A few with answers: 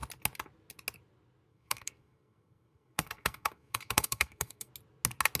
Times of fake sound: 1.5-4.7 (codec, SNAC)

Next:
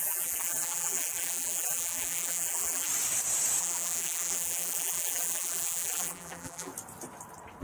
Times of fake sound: 0.0-2.9 (vocoder, BigVGAN v2); 3.6-6.7

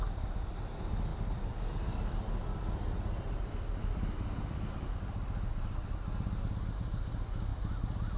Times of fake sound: 1.1-5.9 (vocoder, BigVGAN v2); 7.5-8.2

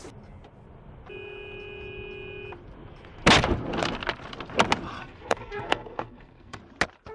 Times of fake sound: 5.0-6.6 (codec, SNAC)

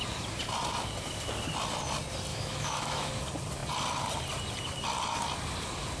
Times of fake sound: 2.3-3.1 (autoencoder, DAC-VAE)

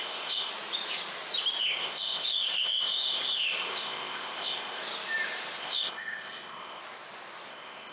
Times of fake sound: 0.0-0.5 (codec, ZipCodec); 1.6-4.8; 5.6-6.8; 7.5-7.9